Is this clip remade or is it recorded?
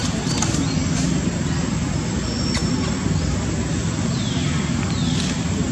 recorded